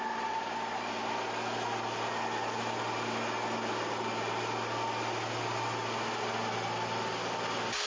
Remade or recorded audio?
recorded